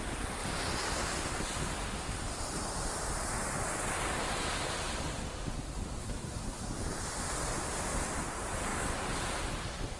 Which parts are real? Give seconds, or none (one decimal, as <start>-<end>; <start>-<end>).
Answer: 0.0-6.0; 6.7-10.0